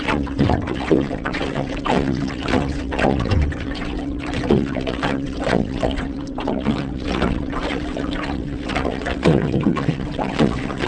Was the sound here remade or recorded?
remade